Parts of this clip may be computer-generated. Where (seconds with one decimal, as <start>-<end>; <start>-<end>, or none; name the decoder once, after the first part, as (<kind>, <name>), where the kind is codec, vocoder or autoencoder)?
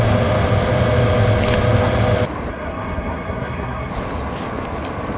2.5-3.9 (codec, SNAC)